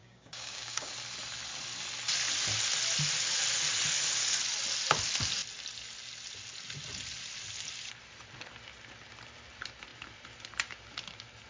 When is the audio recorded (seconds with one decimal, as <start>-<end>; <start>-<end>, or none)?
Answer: 0.9-11.5